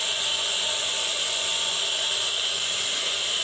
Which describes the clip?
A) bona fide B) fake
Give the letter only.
B